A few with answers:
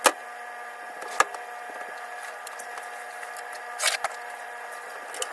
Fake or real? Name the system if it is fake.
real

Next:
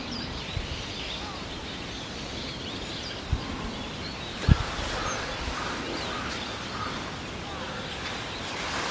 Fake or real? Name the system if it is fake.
real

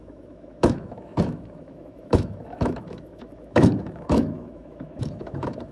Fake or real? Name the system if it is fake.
fake, autoencoder, DAC-VAE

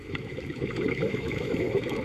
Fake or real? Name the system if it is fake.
fake, autoencoder, DAC-VAE